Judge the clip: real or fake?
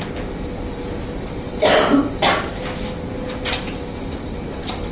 real